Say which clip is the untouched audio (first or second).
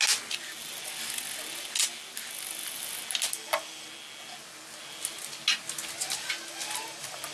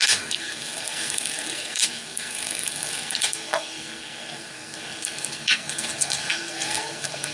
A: first